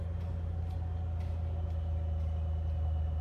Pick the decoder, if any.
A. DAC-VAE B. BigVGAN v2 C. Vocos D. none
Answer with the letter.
D